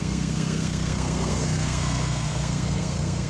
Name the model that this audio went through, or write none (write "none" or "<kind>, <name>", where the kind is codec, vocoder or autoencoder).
codec, SNAC